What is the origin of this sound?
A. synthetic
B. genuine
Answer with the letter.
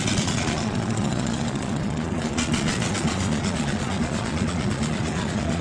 A